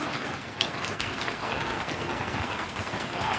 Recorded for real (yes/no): no